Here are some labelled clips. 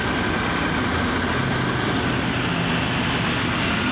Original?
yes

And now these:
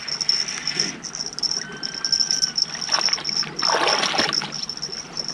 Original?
yes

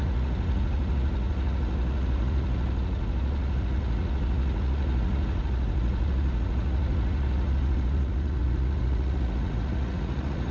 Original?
no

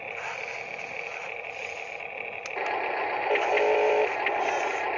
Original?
yes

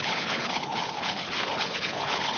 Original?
no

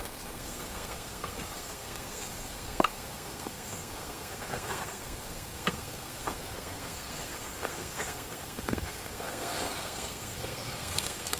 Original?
no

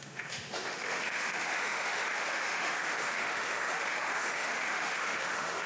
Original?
no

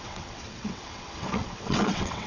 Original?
no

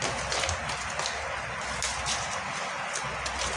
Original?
yes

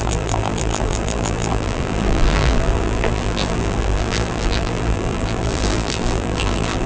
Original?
no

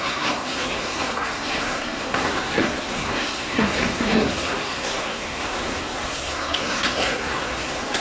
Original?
no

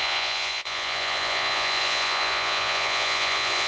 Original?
no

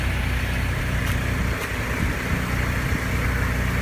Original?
yes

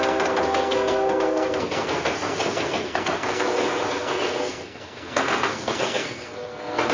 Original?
no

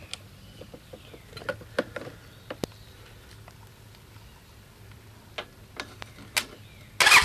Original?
yes